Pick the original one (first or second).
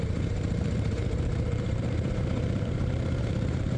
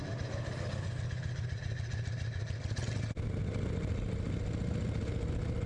second